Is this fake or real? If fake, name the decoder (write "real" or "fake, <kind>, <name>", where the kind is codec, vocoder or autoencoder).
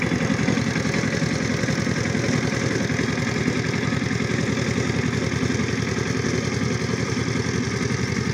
real